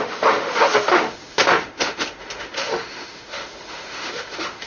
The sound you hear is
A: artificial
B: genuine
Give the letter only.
A